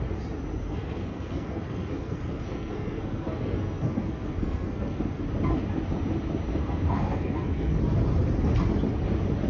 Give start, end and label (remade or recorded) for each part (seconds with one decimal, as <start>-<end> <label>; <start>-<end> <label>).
0.0-0.6 recorded; 0.6-5.2 remade; 5.2-6.5 recorded; 6.5-7.8 remade; 7.8-9.5 recorded